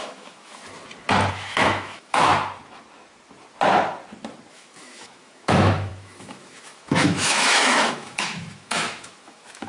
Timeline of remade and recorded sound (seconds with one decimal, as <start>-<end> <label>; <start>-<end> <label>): 0.0-0.6 remade; 0.6-1.3 recorded; 1.3-2.3 remade; 2.3-4.5 recorded; 4.5-9.7 remade